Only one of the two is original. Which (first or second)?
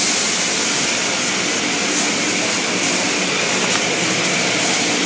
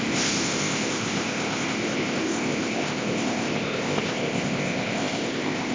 first